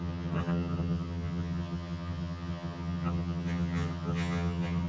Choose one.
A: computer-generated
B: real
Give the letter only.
A